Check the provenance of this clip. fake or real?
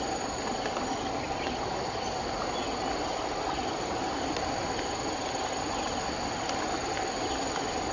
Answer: real